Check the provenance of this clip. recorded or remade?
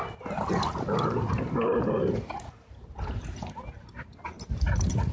recorded